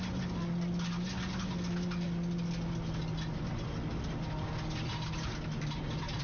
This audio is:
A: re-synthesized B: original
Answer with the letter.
B